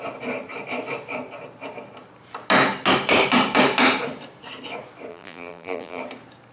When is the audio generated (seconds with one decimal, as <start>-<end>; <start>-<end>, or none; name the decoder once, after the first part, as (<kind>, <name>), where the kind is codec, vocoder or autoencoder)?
5.1-6.0 (vocoder, BigVGAN v2)